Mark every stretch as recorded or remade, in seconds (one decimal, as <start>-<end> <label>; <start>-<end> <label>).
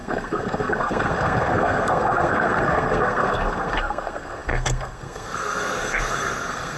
0.0-6.8 remade